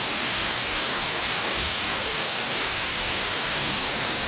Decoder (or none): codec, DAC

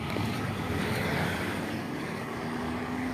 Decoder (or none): codec, DAC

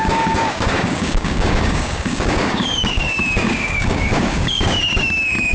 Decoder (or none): codec, DAC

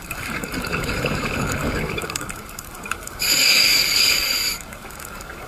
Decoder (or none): codec, DAC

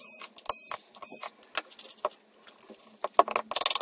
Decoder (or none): none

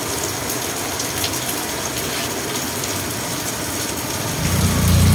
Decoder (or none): none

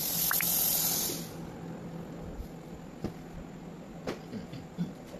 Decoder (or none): none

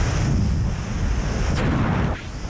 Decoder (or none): none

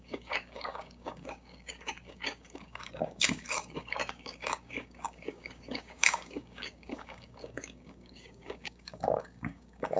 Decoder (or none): codec, DAC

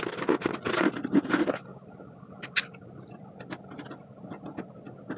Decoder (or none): none